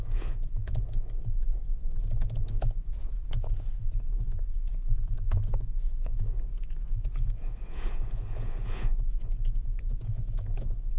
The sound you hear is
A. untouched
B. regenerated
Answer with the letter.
B